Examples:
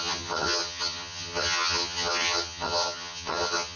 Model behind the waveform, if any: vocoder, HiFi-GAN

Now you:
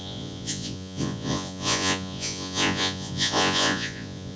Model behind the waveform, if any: vocoder, Vocos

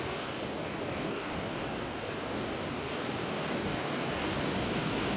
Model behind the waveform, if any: codec, DAC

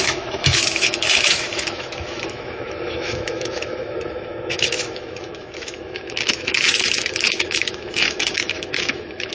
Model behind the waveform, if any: autoencoder, DAC-VAE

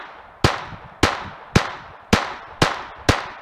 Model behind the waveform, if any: none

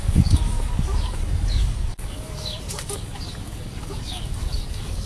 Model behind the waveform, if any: codec, DAC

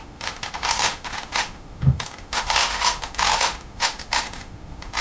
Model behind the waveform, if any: autoencoder, DAC-VAE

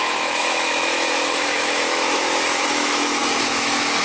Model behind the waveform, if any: autoencoder, DAC-VAE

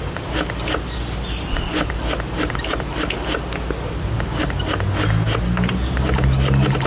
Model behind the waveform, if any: none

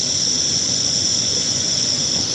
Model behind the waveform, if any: vocoder, Vocos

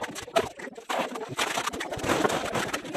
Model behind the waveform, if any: none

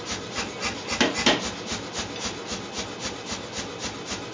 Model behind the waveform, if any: none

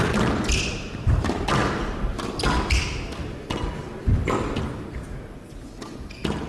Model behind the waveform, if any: none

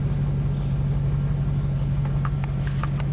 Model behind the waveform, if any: none